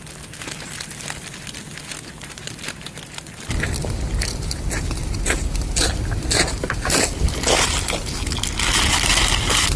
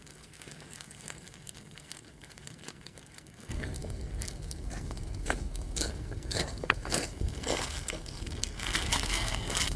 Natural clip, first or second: first